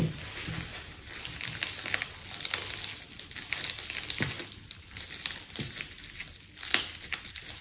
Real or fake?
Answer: real